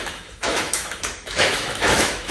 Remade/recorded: remade